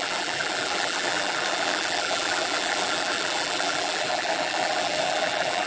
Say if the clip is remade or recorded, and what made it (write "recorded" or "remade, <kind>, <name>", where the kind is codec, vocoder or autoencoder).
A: remade, vocoder, BigVGAN v2